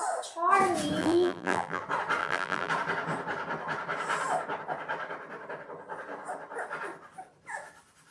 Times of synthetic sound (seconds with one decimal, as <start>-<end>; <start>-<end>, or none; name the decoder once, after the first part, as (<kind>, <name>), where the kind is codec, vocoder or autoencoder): 1.0-1.8 (vocoder, BigVGAN v2); 2.2-2.7